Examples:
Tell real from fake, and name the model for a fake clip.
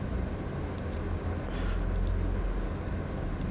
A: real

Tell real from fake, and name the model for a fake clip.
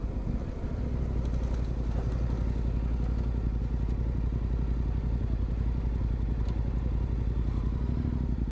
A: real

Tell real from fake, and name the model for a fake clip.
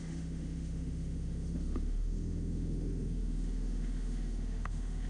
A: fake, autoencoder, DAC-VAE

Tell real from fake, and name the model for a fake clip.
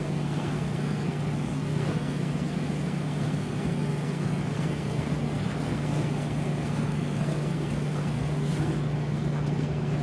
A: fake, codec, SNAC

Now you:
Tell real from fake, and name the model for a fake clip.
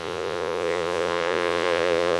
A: fake, vocoder, Vocos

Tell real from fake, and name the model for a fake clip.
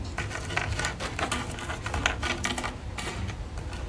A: real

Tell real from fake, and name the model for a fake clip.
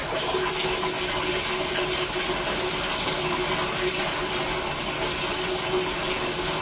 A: real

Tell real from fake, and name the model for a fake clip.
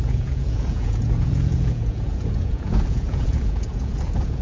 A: fake, vocoder, Vocos